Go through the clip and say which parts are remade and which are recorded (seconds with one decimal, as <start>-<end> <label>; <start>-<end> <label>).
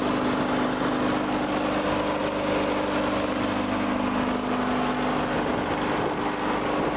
0.0-7.0 recorded